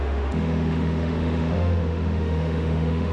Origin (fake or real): fake